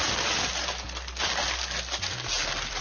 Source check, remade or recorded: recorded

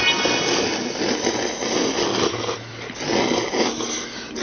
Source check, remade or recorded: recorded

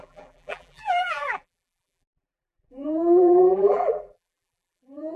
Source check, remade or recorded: remade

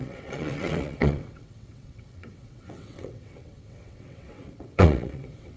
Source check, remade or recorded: remade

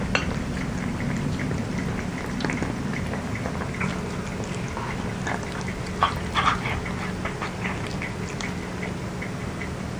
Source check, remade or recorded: recorded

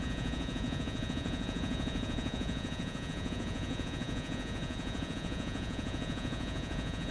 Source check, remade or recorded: remade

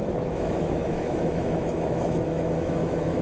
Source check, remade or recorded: remade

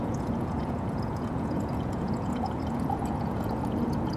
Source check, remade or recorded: remade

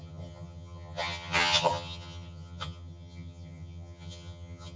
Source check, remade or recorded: remade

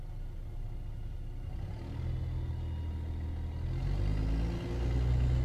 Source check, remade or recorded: recorded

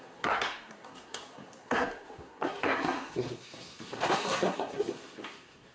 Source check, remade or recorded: remade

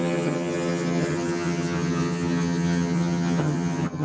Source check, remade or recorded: remade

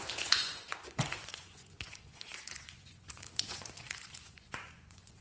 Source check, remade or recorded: remade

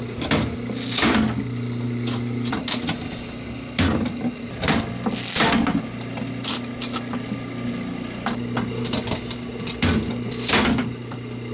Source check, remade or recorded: recorded